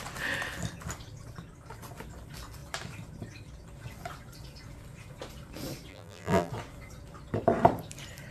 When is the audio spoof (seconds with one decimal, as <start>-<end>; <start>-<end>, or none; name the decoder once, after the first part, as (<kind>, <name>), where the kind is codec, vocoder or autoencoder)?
5.9-6.5 (vocoder, BigVGAN v2)